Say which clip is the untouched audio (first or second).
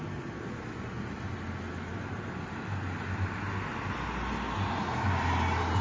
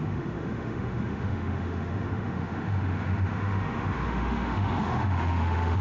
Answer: first